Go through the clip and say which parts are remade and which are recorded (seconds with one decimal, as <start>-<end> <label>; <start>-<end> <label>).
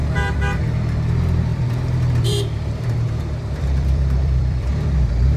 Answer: 0.0-0.6 remade; 0.6-1.5 recorded; 1.5-4.7 remade; 4.7-5.4 recorded